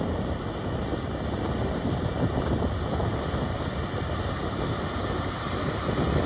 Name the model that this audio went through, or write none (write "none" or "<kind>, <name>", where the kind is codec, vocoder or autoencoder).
none